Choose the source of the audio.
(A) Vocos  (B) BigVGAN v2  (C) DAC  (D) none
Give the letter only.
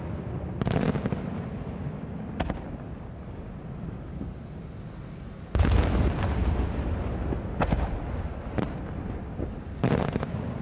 D